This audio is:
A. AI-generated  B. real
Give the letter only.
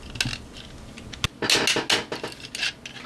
B